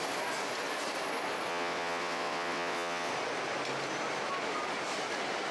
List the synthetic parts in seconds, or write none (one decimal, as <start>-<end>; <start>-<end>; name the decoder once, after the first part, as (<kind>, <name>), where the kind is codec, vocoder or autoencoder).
1.5-3.1 (vocoder, WaveNeXt)

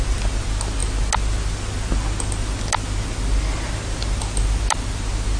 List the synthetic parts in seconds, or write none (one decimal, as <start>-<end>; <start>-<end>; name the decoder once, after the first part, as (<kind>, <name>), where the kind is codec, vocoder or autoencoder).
none